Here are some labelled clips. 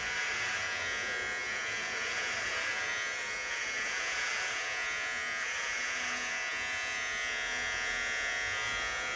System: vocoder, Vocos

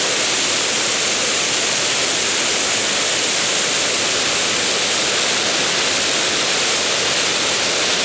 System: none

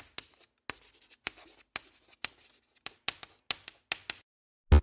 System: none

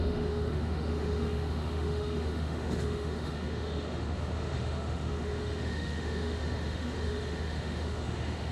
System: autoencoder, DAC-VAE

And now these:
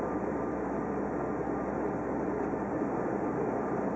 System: none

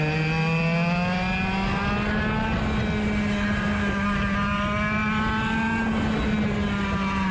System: none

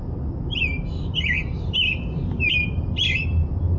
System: none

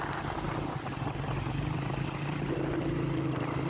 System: vocoder, BigVGAN v2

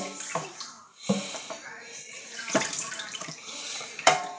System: vocoder, BigVGAN v2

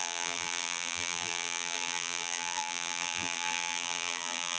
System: vocoder, BigVGAN v2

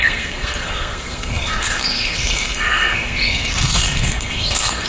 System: codec, SNAC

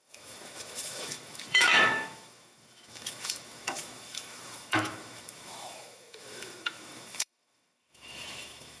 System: autoencoder, DAC-VAE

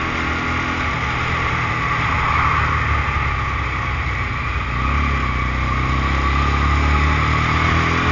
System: none